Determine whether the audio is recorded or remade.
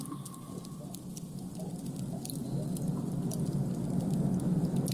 recorded